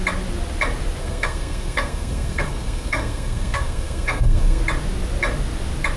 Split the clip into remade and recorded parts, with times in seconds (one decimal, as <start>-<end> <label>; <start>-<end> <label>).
0.0-1.0 recorded; 1.0-4.6 remade; 4.6-6.0 recorded